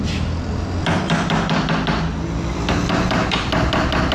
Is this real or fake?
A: real